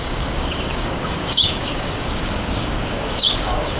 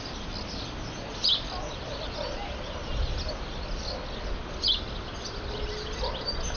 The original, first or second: second